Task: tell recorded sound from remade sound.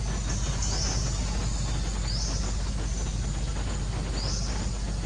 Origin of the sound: recorded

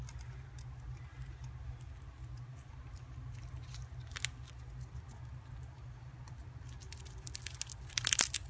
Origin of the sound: recorded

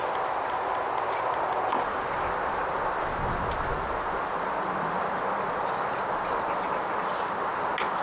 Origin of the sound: recorded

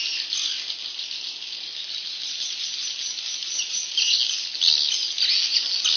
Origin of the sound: recorded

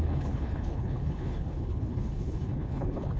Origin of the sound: remade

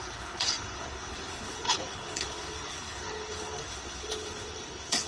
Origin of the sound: remade